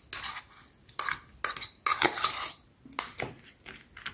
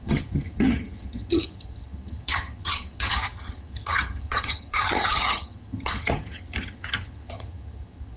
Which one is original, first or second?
first